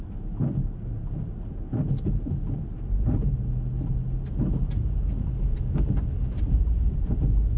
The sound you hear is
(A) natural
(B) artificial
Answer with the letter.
A